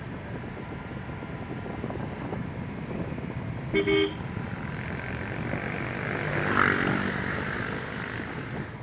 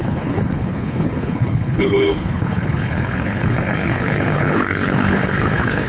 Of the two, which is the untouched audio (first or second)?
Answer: first